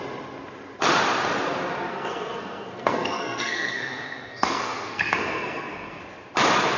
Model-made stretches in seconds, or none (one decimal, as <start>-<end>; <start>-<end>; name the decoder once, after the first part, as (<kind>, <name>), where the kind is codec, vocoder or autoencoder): 1.9-6.0 (codec, SNAC)